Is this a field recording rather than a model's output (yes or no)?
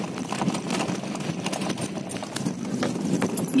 yes